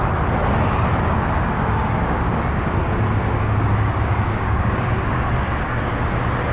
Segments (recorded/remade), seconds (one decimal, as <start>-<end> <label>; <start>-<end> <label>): 0.0-0.9 recorded; 0.9-2.7 remade; 2.7-3.2 recorded; 3.2-5.8 remade; 5.8-6.5 recorded